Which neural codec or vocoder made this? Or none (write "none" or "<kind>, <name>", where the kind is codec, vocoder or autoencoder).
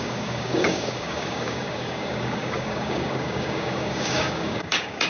codec, DAC